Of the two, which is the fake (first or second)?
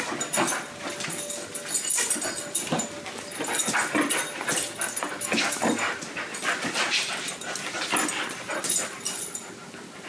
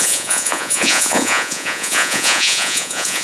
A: second